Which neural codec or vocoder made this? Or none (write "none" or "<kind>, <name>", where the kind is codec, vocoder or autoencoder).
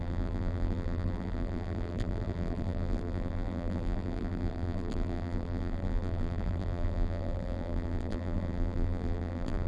vocoder, BigVGAN v2